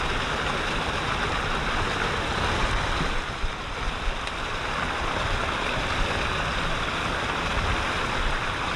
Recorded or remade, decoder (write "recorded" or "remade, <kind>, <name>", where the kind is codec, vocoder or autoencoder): remade, vocoder, BigVGAN v2